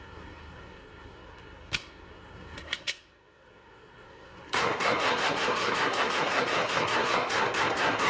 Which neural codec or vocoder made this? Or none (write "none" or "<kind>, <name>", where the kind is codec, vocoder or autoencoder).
codec, SNAC